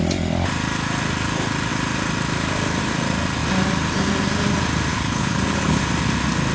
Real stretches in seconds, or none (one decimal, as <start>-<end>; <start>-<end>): 0.0-4.9; 5.8-6.5